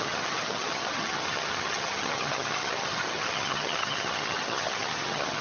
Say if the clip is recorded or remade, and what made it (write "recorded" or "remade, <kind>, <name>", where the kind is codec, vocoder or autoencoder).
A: remade, vocoder, HiFi-GAN